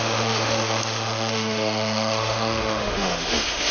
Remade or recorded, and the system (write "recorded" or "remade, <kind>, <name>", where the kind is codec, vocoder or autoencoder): remade, autoencoder, DAC-VAE